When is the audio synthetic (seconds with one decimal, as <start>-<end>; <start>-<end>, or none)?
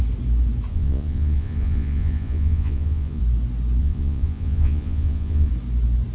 0.7-3.2; 3.8-5.5